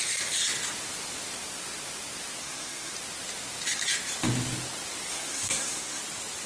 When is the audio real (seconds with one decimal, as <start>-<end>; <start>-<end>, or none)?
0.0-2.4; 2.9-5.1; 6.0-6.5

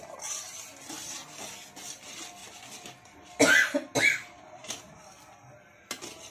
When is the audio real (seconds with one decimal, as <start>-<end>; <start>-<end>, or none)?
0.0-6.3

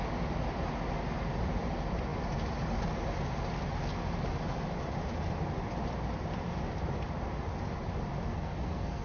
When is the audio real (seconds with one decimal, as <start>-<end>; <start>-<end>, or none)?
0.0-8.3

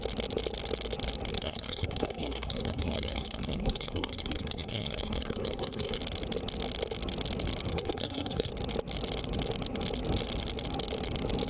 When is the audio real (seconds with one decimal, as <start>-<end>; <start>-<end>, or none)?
0.0-1.3; 6.0-7.7; 8.5-11.5

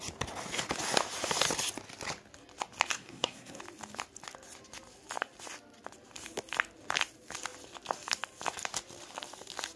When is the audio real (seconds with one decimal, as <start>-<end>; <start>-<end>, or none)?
0.0-2.9; 3.6-9.8

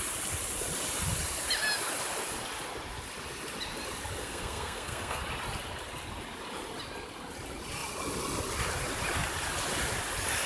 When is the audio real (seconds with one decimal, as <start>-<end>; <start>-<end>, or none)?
0.0-4.2; 5.2-10.5

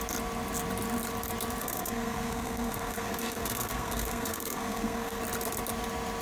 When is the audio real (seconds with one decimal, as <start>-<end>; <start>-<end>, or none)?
0.0-1.6; 5.2-6.2